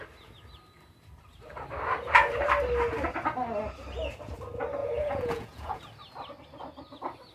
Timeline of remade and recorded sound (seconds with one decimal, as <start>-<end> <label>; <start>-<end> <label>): 0.0-4.8 recorded; 4.8-5.8 remade; 5.8-7.3 recorded